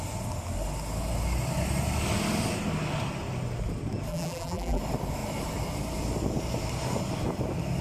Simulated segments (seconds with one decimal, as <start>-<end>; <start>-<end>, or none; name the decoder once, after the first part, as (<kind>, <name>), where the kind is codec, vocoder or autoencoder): 4.1-4.8 (vocoder, BigVGAN v2)

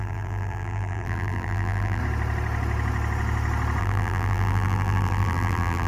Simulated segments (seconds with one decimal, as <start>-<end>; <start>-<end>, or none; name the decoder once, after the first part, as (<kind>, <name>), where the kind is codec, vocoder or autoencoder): 0.0-2.0 (vocoder, BigVGAN v2); 3.8-5.9

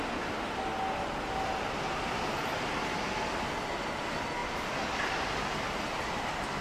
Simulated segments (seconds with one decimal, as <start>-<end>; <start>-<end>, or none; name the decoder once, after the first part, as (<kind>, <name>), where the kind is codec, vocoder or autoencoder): none

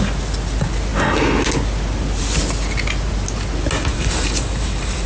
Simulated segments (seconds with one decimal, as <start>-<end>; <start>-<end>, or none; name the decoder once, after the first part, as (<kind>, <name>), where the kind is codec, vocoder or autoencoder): 3.9-5.1 (vocoder, BigVGAN v2)